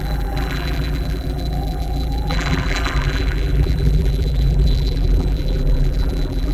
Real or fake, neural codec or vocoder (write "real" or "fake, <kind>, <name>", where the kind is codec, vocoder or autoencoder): fake, vocoder, BigVGAN v2